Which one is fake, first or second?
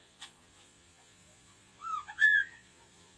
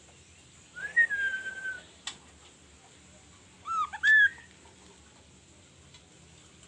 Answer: first